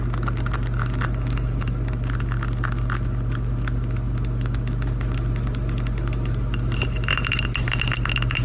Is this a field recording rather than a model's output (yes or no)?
yes